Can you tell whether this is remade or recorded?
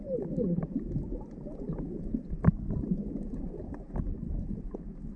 recorded